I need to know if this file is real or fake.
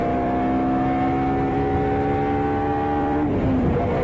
fake